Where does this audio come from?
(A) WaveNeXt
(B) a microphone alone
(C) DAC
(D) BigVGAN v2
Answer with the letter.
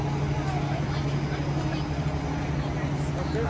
B